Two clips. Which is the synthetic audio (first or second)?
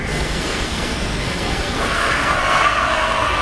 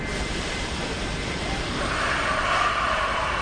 first